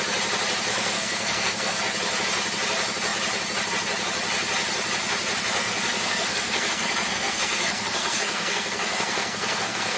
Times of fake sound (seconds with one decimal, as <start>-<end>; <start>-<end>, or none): 0.7-1.8; 5.6-10.0